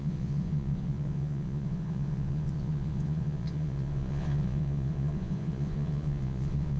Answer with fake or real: fake